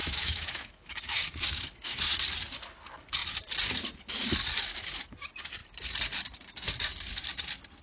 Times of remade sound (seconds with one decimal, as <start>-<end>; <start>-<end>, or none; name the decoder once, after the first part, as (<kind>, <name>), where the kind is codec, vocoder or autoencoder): 0.0-2.0 (autoencoder, DAC-VAE)